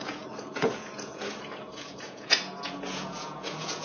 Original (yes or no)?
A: no